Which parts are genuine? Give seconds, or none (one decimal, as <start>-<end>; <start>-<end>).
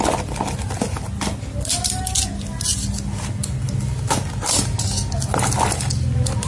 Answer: 0.0-6.5